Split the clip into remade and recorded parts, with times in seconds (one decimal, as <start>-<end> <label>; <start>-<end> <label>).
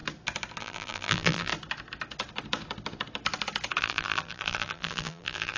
0.0-0.6 recorded; 0.6-1.5 remade; 1.5-3.8 recorded; 3.8-5.6 remade